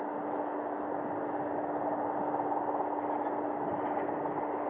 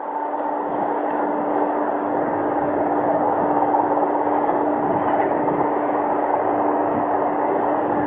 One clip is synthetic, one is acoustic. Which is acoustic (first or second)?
first